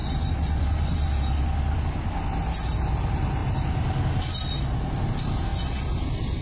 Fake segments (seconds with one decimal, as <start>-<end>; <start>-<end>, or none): none